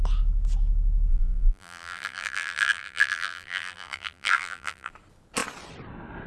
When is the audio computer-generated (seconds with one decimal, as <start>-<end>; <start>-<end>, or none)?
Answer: 1.1-4.9